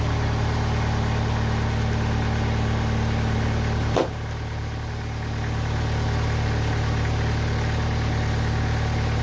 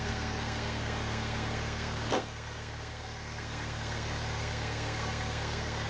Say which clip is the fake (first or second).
second